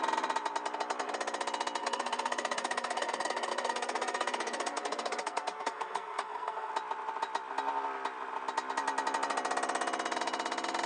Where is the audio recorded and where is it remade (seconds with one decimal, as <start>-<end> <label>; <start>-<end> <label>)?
0.0-1.8 recorded; 1.8-6.7 remade; 6.7-10.9 recorded